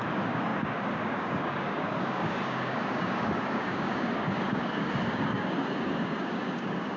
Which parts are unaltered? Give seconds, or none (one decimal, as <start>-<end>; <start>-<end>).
none